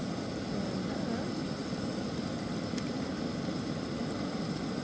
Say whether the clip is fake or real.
real